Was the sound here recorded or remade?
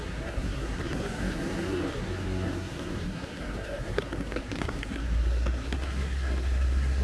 remade